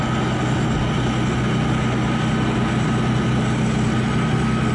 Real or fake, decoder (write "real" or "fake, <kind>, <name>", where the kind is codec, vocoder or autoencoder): real